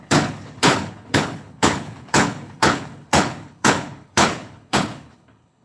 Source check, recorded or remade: remade